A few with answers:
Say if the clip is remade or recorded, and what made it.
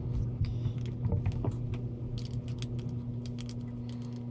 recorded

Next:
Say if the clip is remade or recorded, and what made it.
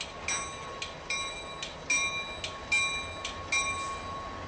recorded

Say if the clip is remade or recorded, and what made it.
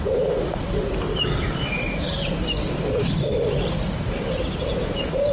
remade, vocoder, BigVGAN v2